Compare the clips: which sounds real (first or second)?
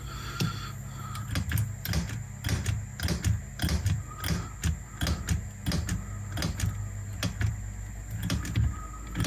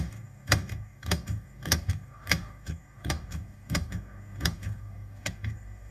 first